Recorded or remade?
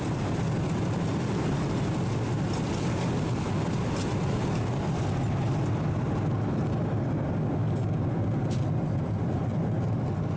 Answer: recorded